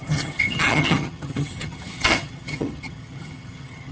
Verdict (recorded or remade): remade